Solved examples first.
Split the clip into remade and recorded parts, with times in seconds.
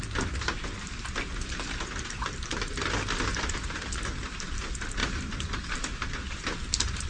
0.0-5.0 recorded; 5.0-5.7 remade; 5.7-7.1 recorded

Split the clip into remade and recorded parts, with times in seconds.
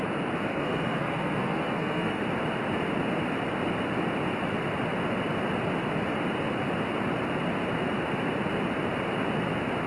0.0-0.5 recorded; 0.5-2.2 remade; 2.2-9.9 recorded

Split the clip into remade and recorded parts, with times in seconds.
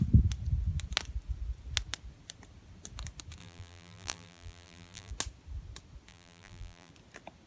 0.0-3.4 recorded; 3.4-5.1 remade; 5.1-6.1 recorded; 6.1-6.9 remade; 6.9-7.5 recorded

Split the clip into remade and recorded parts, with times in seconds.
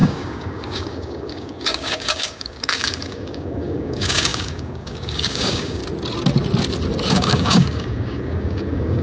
0.0-5.8 remade; 5.8-7.1 recorded; 7.1-9.0 remade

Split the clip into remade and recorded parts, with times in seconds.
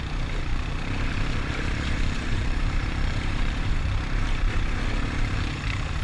0.0-0.5 recorded; 0.5-3.7 remade; 3.7-6.0 recorded